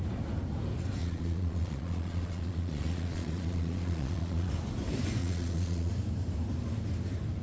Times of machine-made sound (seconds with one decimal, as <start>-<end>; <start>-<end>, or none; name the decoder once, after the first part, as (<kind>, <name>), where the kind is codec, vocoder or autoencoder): 1.0-4.5 (vocoder, Vocos); 5.2-5.9

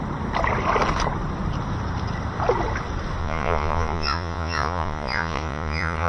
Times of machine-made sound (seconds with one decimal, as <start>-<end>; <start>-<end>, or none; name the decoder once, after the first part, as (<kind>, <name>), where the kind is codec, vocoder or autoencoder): 3.2-6.1 (vocoder, Vocos)

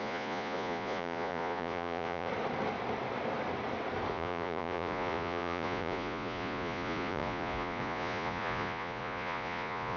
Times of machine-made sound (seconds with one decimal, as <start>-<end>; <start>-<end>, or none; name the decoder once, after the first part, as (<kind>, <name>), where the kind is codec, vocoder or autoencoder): 0.0-2.3 (vocoder, Vocos); 4.1-10.0